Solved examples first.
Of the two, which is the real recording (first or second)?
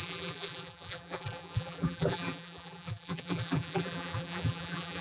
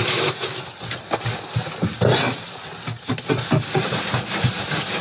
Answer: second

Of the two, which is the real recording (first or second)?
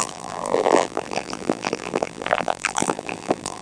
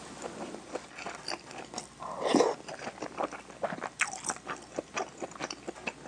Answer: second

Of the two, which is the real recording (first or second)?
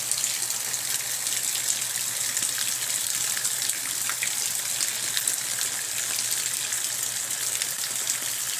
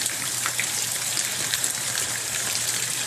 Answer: first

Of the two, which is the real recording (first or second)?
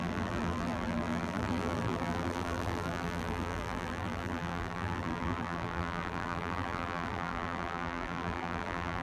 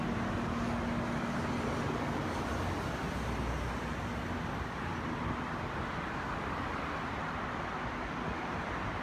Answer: second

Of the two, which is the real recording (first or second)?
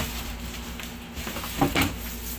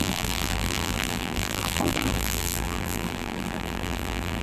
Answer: first